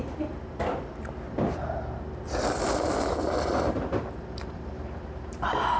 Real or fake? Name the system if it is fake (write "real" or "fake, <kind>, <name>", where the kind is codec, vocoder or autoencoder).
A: fake, vocoder, BigVGAN v2